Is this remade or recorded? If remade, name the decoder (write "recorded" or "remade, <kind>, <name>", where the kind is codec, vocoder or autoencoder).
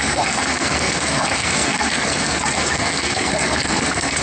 remade, codec, SNAC